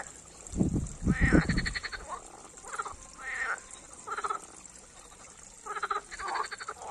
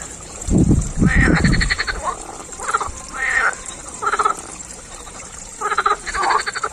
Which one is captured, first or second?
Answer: first